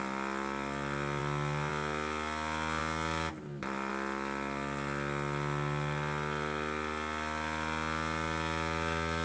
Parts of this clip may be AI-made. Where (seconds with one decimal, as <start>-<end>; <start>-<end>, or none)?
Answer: none